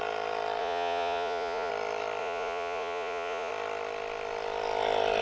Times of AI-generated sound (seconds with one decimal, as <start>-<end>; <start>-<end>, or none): 0.6-1.7; 2.2-3.5